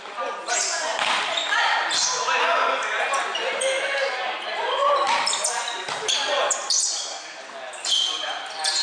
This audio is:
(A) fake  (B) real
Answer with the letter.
B